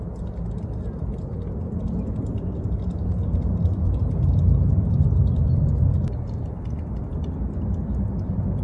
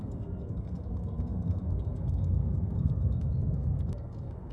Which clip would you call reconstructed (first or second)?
second